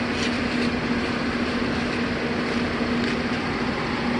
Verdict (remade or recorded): recorded